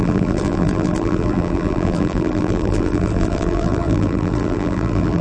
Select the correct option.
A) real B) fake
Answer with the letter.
B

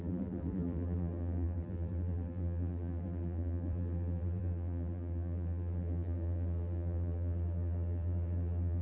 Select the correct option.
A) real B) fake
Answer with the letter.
B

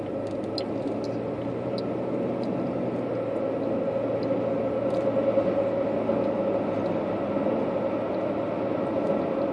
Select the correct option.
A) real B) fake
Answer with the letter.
A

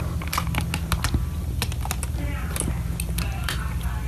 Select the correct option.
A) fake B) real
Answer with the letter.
B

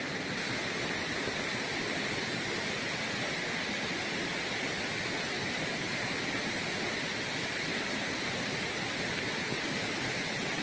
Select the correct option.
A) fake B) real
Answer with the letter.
B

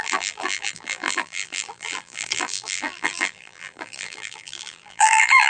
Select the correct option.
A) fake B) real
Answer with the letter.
A